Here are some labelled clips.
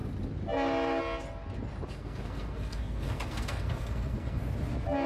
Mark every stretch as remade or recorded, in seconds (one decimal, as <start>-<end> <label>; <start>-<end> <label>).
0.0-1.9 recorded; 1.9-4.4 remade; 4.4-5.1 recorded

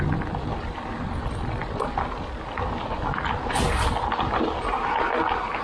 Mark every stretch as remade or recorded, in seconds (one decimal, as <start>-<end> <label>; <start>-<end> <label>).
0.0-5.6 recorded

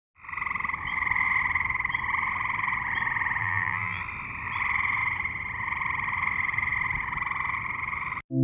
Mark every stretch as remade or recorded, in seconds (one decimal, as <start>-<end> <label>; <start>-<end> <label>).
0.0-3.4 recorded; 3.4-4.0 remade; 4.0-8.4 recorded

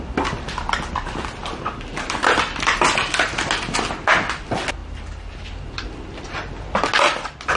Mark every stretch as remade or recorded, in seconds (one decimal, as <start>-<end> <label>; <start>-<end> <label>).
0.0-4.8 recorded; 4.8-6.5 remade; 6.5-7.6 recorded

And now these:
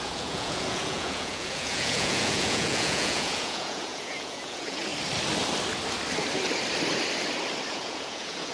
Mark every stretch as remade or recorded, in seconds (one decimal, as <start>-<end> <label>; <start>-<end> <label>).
0.0-4.9 remade; 4.9-7.7 recorded; 7.7-8.5 remade